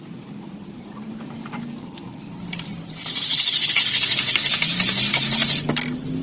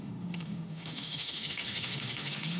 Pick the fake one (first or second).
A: second